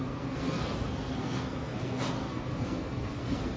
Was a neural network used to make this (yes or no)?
yes